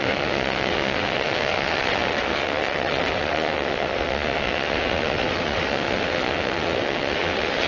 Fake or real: fake